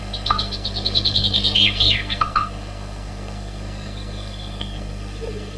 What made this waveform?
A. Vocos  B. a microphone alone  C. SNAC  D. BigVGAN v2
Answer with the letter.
C